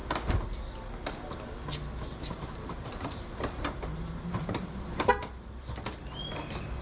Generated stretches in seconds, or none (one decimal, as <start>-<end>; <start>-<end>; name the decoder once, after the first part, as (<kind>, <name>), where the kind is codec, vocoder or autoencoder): 2.1-5.2 (vocoder, BigVGAN v2)